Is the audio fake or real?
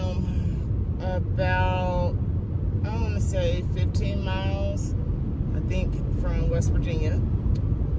real